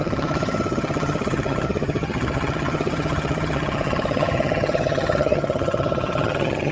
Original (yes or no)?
no